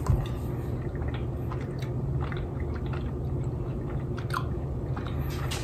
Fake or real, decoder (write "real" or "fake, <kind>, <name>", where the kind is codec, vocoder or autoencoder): real